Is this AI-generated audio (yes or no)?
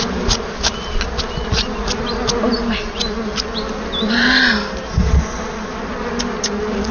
no